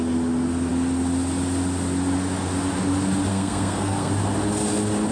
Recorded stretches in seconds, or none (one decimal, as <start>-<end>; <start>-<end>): 0.0-3.3; 4.1-5.1